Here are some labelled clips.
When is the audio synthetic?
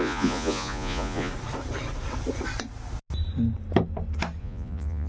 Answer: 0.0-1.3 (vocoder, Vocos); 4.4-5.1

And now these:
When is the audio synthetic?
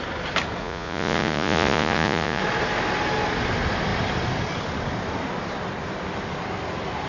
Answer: 0.6-2.4 (vocoder, Vocos)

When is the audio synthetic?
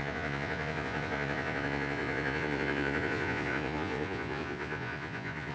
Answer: 0.0-5.5 (vocoder, Vocos)